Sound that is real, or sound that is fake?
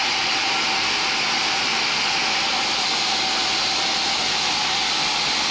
real